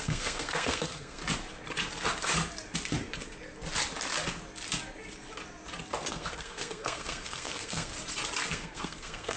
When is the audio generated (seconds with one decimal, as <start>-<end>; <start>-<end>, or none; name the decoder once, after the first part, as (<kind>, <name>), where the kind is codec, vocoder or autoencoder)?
0.0-1.2 (codec, SNAC); 6.1-7.9; 8.5-9.4